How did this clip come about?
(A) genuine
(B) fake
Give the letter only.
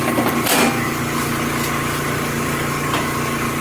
A